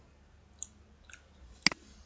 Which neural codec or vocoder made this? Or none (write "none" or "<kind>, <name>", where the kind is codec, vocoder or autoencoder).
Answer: none